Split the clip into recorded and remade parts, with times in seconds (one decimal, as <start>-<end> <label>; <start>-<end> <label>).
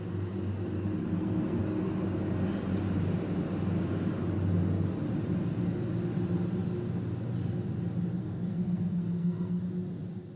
0.0-1.0 recorded; 1.0-1.6 remade; 1.6-8.2 recorded; 8.2-9.6 remade; 9.6-10.4 recorded